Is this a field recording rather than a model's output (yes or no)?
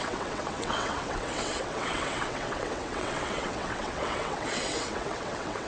no